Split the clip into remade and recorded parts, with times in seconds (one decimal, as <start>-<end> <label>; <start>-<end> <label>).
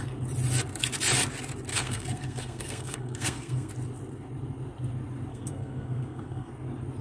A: 0.0-1.7 recorded; 1.7-3.7 remade; 3.7-5.3 recorded; 5.3-6.5 remade; 6.5-7.0 recorded